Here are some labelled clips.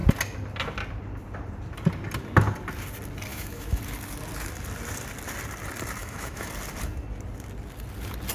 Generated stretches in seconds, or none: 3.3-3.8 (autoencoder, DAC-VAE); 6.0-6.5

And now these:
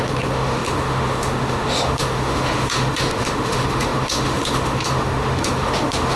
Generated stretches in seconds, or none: 0.0-6.2 (autoencoder, DAC-VAE)

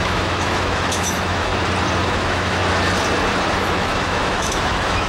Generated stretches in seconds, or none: 0.0-1.5 (autoencoder, DAC-VAE); 2.0-2.6; 3.6-5.1

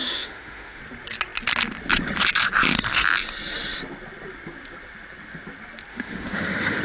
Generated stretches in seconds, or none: 0.0-0.8 (autoencoder, DAC-VAE); 5.9-6.8

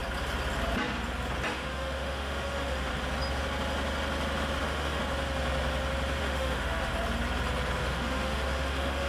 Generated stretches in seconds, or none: 1.5-2.9 (autoencoder, DAC-VAE); 4.6-5.0; 6.2-6.9; 7.8-9.1

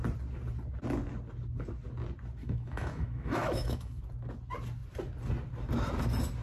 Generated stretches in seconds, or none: 2.4-4.0 (autoencoder, DAC-VAE)

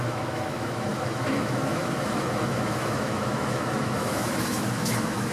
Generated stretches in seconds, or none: 0.0-5.3 (autoencoder, DAC-VAE)